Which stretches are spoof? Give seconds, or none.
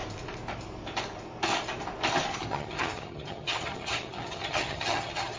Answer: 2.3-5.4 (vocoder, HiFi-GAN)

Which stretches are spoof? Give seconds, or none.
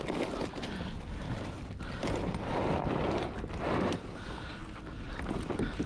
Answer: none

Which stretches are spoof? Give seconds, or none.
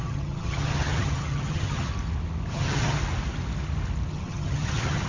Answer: 0.0-1.9 (vocoder, HiFi-GAN); 2.5-3.0; 4.1-5.1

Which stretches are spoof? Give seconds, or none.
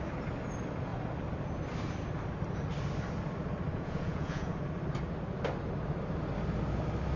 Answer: 3.7-4.6 (vocoder, Vocos)